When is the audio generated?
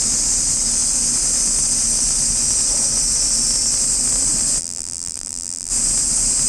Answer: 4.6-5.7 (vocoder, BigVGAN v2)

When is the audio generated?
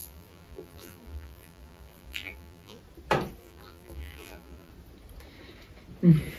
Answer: 0.0-2.8 (vocoder, BigVGAN v2); 3.4-4.7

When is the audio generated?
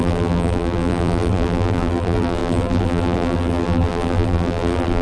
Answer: 0.0-5.0 (vocoder, BigVGAN v2)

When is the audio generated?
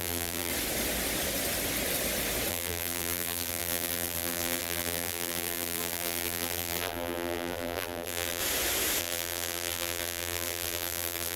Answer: 0.0-0.5 (vocoder, BigVGAN v2); 2.5-8.4; 9.0-11.4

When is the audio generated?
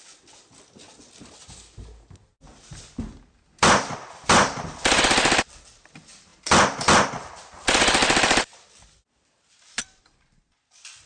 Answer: 2.5-5.0 (vocoder, BigVGAN v2); 8.0-10.0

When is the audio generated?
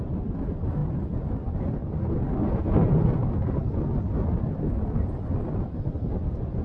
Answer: 0.8-1.6 (vocoder, BigVGAN v2)